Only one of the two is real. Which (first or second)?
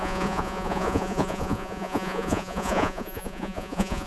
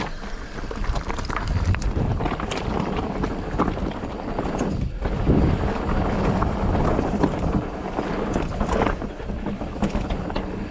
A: second